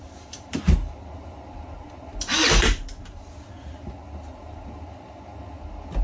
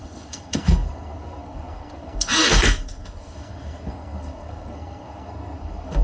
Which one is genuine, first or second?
first